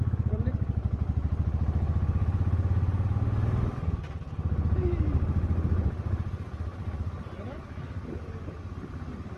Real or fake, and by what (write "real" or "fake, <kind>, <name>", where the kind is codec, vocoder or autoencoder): real